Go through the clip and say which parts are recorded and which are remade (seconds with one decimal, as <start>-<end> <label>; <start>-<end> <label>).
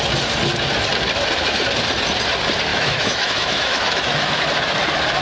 0.0-2.7 recorded; 2.7-4.4 remade; 4.4-5.2 recorded